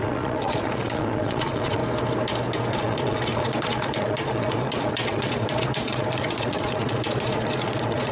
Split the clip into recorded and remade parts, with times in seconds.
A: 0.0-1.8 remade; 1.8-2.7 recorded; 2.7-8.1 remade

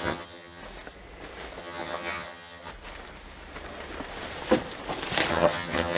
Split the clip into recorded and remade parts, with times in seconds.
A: 0.0-0.6 remade; 0.6-1.6 recorded; 1.6-2.7 remade; 2.7-5.3 recorded; 5.3-6.0 remade

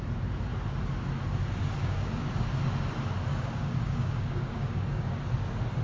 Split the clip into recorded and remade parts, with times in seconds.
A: 0.0-1.8 recorded; 1.8-2.3 remade; 2.3-3.3 recorded; 3.3-5.2 remade; 5.2-5.8 recorded

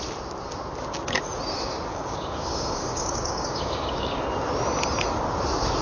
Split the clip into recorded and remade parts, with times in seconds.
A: 0.0-1.9 recorded; 1.9-4.2 remade; 4.2-5.8 recorded